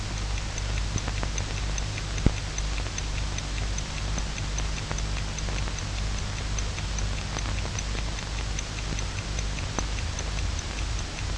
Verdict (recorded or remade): recorded